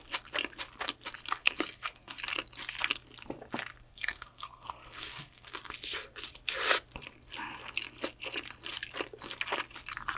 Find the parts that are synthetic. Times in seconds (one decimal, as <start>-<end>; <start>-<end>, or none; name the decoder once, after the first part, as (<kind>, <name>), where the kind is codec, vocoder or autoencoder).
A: 1.4-2.2 (codec, SNAC); 3.9-5.5